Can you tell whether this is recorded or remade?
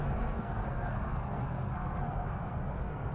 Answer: remade